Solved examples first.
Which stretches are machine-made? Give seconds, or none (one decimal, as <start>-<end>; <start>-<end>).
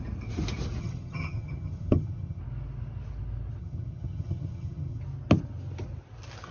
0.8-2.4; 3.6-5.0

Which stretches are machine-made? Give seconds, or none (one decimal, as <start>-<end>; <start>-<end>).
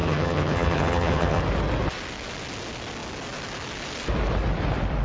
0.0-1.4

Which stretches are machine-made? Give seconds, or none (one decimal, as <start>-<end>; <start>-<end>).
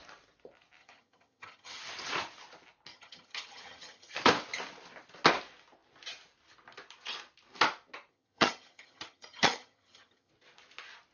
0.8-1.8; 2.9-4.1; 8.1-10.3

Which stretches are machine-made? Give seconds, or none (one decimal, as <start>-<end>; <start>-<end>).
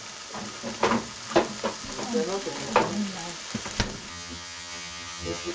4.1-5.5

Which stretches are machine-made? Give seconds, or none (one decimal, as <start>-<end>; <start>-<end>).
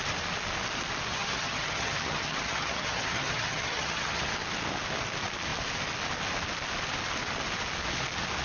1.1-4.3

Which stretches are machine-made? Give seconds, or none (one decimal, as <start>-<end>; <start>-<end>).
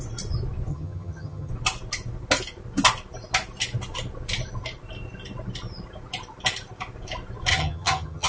0.7-1.5; 7.5-8.3